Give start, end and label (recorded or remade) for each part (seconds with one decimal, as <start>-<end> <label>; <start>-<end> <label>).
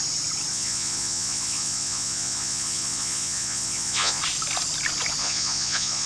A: 0.0-0.5 recorded; 0.5-4.2 remade; 4.2-5.2 recorded; 5.2-6.1 remade